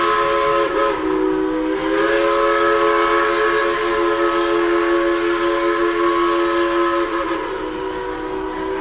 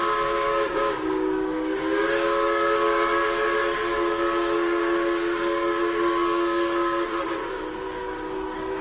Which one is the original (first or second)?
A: first